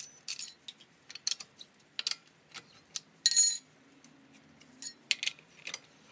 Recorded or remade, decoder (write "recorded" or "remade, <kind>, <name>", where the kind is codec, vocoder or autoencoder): recorded